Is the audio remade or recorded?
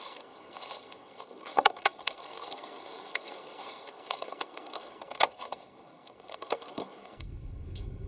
remade